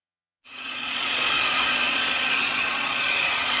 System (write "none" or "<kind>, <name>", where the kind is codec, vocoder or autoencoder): vocoder, Vocos